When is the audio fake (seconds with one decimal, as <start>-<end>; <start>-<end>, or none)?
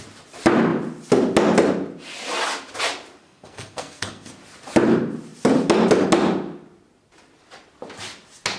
3.2-4.3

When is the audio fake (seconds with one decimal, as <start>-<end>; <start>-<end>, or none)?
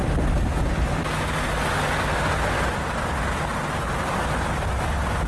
none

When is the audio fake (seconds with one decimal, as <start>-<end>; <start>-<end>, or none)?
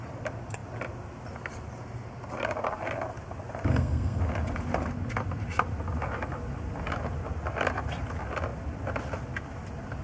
3.7-4.2